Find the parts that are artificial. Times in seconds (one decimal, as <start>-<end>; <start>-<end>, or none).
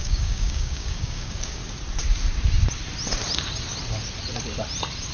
0.0-1.6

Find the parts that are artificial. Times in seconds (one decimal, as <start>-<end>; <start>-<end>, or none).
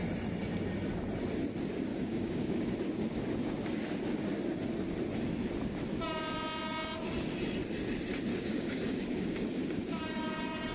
1.9-2.7; 8.3-10.0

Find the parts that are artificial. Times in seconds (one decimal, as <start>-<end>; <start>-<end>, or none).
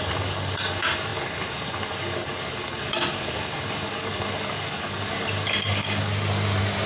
0.0-6.1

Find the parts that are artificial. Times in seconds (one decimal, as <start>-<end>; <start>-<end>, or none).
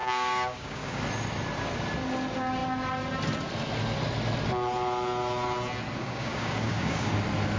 0.0-1.0; 6.0-7.1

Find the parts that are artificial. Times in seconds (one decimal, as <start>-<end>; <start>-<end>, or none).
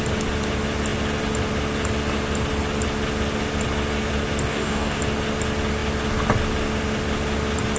4.5-5.0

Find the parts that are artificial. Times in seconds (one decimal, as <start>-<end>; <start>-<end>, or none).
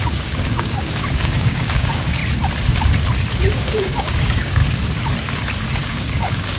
0.0-2.2; 3.5-4.6; 5.8-6.6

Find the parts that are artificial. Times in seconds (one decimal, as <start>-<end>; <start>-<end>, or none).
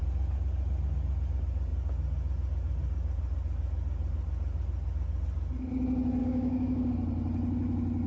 6.2-6.9